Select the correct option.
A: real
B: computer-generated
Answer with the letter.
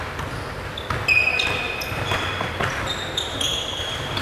A